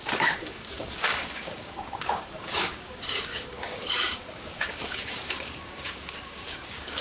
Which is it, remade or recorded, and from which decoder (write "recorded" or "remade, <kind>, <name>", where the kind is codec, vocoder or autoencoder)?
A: remade, codec, DAC